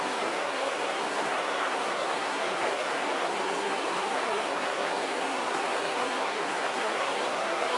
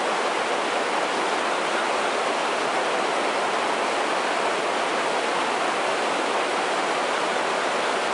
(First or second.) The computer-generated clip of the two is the first